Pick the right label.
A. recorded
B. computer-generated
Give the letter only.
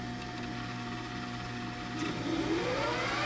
A